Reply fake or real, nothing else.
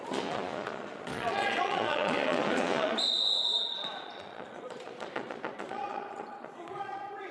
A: fake